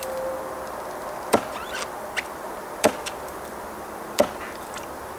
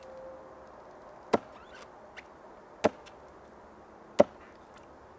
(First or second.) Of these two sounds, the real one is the second